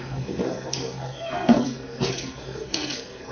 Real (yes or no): no